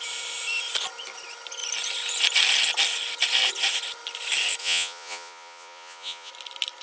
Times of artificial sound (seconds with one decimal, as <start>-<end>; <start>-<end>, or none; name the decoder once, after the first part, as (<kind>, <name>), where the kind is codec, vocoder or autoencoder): 4.6-6.3 (vocoder, Vocos)